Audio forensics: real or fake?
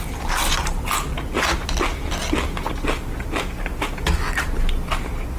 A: real